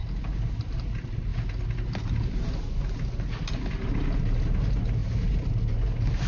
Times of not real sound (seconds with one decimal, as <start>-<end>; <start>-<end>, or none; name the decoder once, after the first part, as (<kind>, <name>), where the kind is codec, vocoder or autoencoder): none